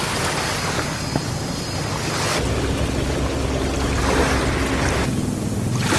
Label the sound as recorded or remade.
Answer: recorded